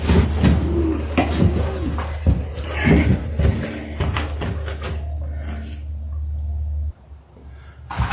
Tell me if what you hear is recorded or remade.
recorded